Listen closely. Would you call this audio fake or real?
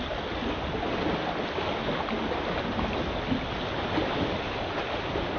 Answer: real